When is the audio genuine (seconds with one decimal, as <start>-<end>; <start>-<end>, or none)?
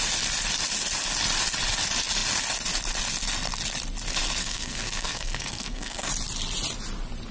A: 0.0-4.4; 6.1-7.3